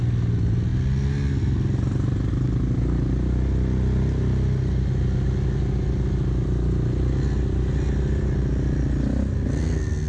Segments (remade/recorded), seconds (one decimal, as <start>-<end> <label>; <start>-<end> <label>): 0.0-10.1 recorded